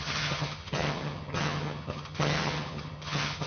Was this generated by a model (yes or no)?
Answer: yes